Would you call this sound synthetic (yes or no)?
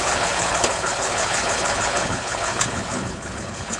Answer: yes